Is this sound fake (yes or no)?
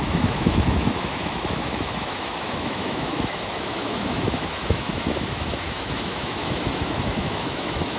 yes